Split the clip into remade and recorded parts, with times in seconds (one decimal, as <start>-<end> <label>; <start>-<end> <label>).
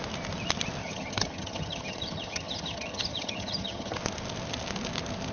0.0-0.8 recorded; 0.8-4.0 remade; 4.0-5.3 recorded